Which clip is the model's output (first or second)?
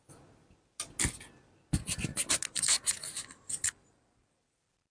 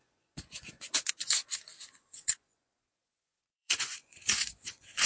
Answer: second